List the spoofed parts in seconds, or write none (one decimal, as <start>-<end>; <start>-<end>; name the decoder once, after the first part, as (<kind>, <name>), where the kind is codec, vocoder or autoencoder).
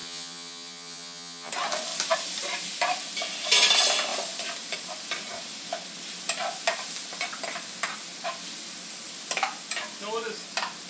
0.0-1.5 (vocoder, HiFi-GAN)